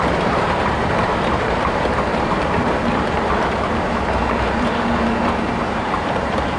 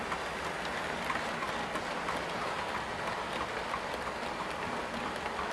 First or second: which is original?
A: second